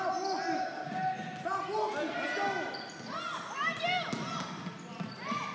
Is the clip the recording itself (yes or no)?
yes